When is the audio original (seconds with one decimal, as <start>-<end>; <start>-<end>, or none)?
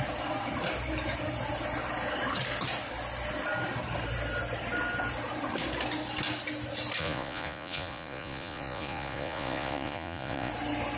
0.0-7.0; 10.5-11.0